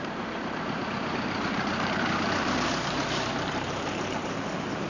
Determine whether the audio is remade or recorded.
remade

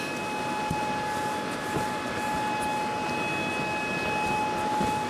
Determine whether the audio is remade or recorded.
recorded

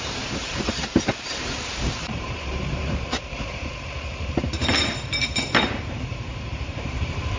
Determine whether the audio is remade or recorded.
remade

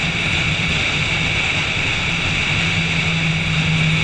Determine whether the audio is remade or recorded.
recorded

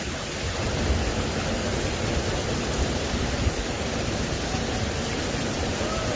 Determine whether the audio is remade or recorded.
recorded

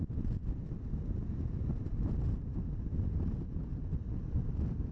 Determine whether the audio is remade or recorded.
recorded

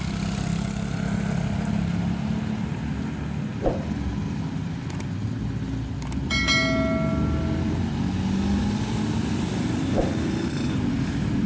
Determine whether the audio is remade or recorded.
recorded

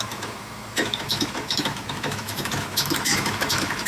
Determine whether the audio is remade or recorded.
remade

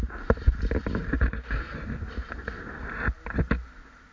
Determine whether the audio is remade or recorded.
recorded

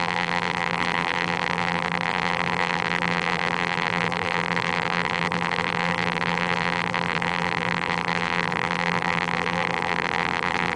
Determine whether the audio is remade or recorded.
remade